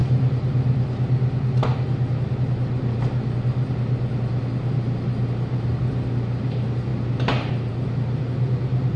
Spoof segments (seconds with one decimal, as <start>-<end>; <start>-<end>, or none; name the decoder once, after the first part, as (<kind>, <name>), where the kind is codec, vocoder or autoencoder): none